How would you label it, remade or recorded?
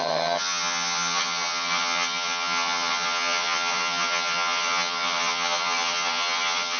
remade